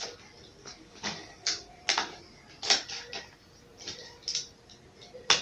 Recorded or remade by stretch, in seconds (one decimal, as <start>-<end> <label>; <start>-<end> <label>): 0.0-0.6 recorded; 0.6-1.7 remade; 1.7-5.4 recorded